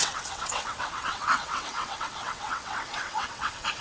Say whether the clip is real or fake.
fake